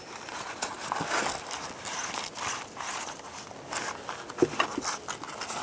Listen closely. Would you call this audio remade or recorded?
recorded